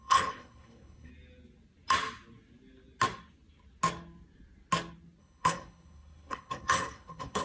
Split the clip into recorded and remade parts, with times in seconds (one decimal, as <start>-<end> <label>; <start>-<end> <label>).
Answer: 0.0-1.1 remade; 1.1-5.2 recorded; 5.2-7.4 remade